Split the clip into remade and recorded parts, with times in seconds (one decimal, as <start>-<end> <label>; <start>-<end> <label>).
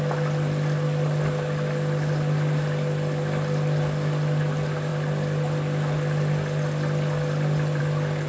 0.0-8.3 recorded